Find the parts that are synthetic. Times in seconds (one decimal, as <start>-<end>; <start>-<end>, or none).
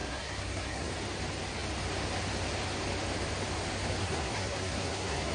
0.0-0.9; 4.0-5.3